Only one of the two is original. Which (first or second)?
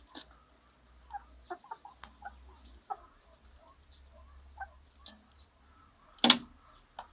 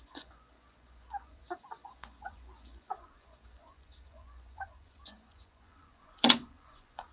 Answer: first